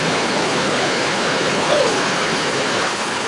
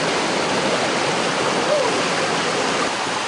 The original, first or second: second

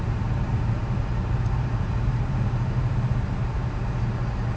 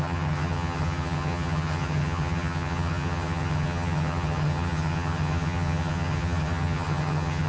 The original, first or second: first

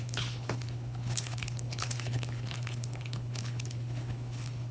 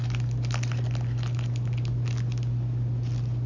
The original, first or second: second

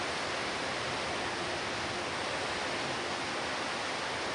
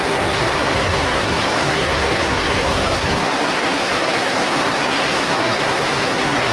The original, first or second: first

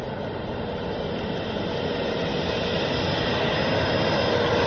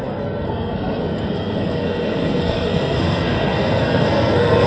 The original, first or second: first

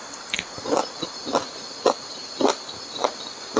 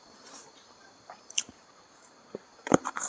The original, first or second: first